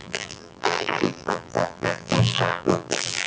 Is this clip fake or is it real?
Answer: fake